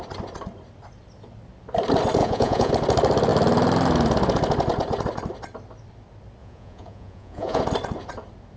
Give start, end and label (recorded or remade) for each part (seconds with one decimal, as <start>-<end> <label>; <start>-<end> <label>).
0.0-2.2 recorded; 2.2-2.7 remade; 2.7-6.4 recorded; 6.4-7.6 remade; 7.6-8.6 recorded